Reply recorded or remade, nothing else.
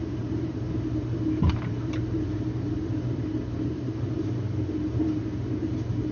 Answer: remade